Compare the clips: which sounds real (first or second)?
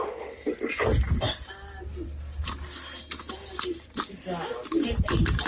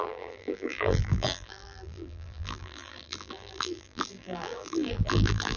first